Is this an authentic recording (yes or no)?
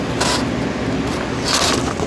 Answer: yes